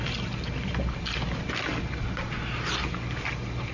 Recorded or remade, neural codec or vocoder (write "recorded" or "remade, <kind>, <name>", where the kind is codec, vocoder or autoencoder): recorded